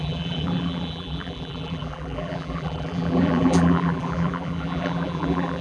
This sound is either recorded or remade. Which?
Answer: remade